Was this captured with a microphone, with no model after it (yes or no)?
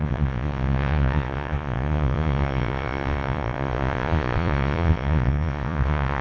no